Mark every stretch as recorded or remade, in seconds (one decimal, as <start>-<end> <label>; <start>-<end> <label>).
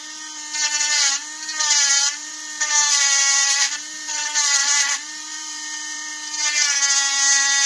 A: 0.0-1.9 recorded; 1.9-6.1 remade; 6.1-7.7 recorded